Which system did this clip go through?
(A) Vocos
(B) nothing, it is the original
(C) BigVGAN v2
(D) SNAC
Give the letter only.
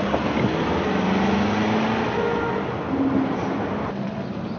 B